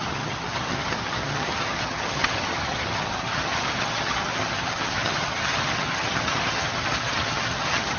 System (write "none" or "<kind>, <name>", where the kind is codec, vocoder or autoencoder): vocoder, HiFi-GAN